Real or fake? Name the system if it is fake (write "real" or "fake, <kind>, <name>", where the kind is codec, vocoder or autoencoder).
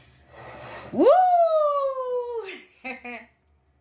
real